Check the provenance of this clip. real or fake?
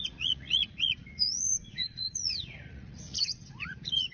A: fake